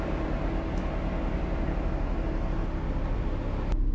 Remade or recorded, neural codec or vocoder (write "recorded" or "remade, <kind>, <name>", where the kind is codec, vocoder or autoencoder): recorded